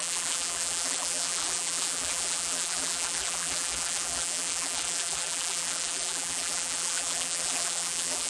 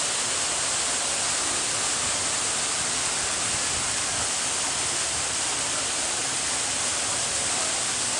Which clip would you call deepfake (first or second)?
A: first